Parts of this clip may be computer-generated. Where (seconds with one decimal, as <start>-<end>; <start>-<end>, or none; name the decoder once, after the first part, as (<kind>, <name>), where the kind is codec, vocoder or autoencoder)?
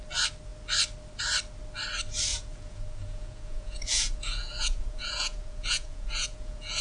2.3-6.8 (vocoder, Vocos)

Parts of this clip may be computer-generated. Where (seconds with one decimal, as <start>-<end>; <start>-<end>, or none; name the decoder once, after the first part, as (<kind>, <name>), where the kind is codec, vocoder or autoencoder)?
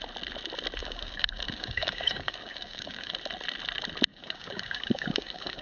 0.8-3.1 (codec, DAC); 4.1-5.6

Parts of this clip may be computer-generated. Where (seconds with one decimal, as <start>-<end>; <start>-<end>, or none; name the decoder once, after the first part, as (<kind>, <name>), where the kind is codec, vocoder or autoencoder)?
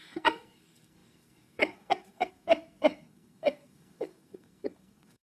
0.0-5.3 (codec, SNAC)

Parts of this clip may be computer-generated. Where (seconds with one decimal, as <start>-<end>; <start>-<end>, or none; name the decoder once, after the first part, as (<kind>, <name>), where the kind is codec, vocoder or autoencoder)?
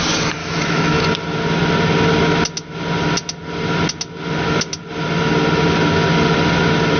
0.4-1.0 (autoencoder, DAC-VAE)